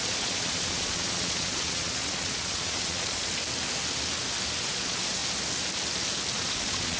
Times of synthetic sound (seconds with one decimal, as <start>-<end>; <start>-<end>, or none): 0.0-3.3; 4.6-5.2; 6.3-7.0